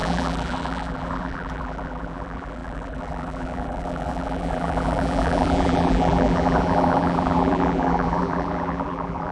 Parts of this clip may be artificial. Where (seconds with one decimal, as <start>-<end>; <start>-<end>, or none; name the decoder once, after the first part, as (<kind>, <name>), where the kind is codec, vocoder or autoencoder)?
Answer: 0.0-9.3 (vocoder, BigVGAN v2)

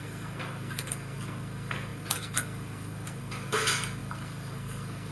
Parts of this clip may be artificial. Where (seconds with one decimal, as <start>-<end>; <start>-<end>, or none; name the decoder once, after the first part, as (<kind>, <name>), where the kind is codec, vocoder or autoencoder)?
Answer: 0.0-5.1 (codec, SNAC)

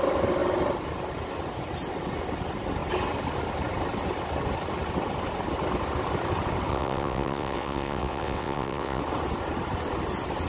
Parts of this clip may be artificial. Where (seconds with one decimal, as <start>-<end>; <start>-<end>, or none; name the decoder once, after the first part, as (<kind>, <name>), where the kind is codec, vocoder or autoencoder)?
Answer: 6.7-9.0 (vocoder, WaveNeXt)